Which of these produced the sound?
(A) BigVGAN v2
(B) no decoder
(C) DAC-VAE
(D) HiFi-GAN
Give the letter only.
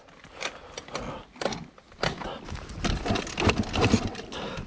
B